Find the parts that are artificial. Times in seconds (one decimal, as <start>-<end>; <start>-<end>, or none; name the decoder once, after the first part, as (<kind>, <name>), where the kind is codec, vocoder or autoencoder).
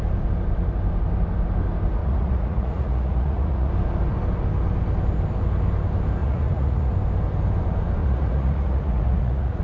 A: 2.0-3.7 (vocoder, Vocos); 6.2-6.9; 8.0-9.6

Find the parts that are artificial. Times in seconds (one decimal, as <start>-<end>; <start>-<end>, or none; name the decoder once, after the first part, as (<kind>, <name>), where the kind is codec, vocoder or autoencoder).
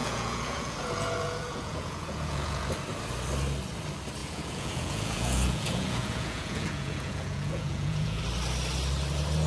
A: 0.0-2.7 (vocoder, Vocos); 4.2-8.2